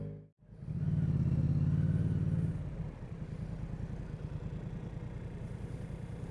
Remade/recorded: recorded